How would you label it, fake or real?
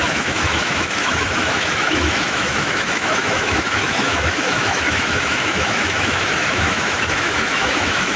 fake